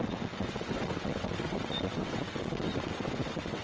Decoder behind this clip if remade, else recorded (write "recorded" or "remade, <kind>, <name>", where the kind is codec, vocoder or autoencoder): remade, vocoder, WaveNeXt